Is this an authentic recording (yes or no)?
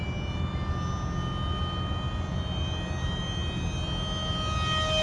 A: yes